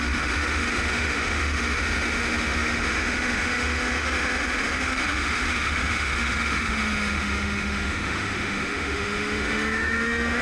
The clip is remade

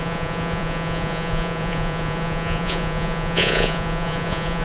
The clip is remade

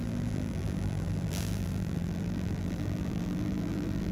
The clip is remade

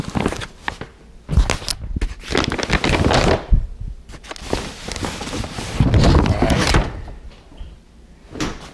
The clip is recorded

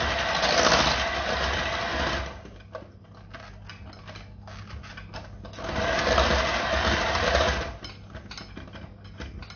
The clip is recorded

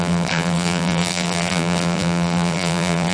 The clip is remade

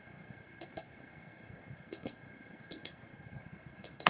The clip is remade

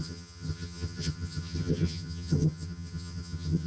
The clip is remade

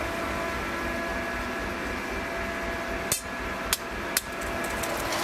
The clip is recorded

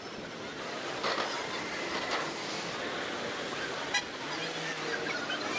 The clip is recorded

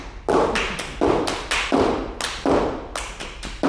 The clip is recorded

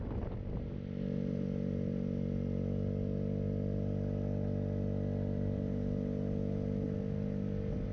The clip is recorded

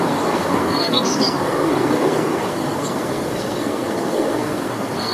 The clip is remade